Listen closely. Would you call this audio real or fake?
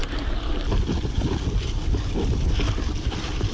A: real